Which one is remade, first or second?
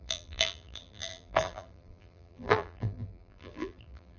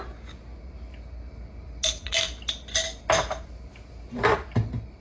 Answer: first